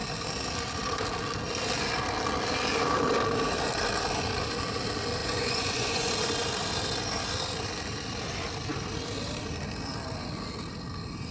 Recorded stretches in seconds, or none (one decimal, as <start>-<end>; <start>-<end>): 0.0-5.2; 6.1-11.3